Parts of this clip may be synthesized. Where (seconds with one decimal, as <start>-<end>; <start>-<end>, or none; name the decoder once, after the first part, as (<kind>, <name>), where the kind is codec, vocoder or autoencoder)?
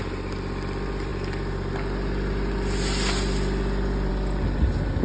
none